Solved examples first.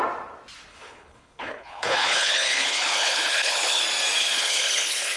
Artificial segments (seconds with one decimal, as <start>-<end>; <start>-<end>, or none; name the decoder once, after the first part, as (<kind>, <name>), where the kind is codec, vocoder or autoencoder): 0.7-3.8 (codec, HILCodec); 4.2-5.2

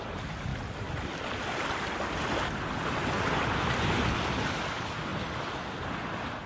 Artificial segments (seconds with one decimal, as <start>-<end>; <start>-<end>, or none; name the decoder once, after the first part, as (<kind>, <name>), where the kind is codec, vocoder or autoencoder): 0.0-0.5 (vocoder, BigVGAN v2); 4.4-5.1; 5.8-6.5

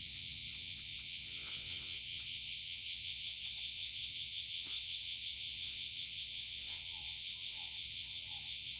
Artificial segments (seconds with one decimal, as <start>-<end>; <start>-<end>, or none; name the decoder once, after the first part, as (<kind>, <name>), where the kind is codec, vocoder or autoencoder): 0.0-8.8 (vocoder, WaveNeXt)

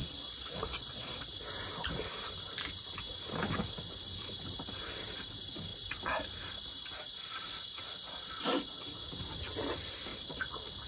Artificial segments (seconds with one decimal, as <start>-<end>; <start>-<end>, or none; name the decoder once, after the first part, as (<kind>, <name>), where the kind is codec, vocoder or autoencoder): 0.0-1.3 (vocoder, Vocos); 10.1-10.9

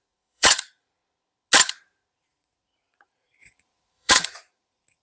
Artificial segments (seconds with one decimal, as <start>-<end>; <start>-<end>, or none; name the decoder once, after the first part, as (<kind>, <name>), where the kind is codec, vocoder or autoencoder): 0.0-1.0 (vocoder, Vocos); 2.1-5.0

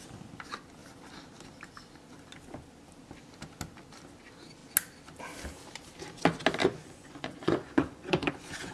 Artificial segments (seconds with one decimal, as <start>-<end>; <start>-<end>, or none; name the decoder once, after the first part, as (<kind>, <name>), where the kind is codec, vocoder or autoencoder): 6.6-8.7 (vocoder, Vocos)

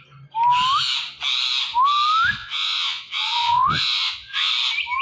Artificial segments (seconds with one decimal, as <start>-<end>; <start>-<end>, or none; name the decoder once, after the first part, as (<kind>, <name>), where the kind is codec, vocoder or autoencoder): 2.4-4.5 (vocoder, Vocos)